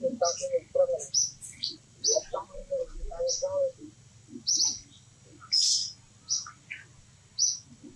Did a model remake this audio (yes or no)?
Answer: no